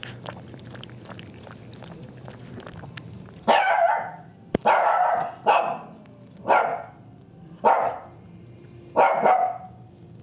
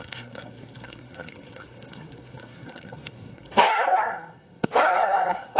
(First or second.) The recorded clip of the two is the first